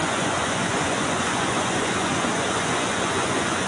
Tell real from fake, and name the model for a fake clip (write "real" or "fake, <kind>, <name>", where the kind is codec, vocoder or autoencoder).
fake, vocoder, Vocos